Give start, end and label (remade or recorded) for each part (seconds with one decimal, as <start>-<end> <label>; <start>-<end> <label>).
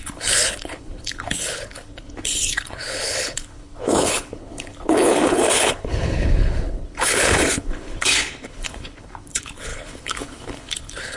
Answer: 0.0-11.2 remade